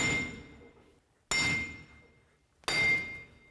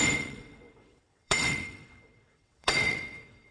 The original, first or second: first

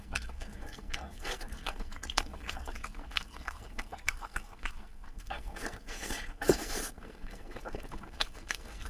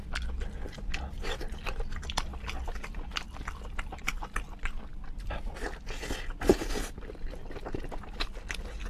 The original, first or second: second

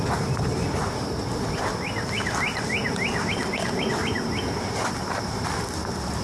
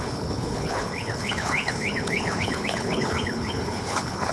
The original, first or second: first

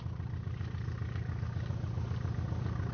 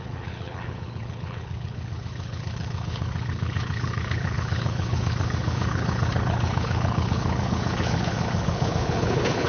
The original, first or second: first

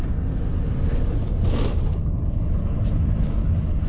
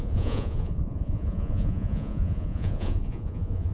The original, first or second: first